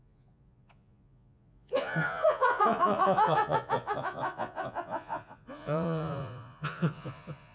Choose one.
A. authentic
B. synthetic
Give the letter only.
B